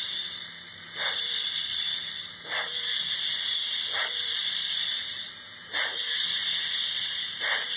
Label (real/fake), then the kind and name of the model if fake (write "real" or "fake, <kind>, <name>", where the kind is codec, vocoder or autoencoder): fake, vocoder, BigVGAN v2